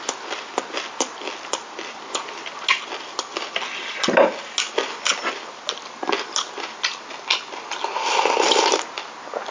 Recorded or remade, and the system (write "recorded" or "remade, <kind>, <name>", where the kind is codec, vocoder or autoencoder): recorded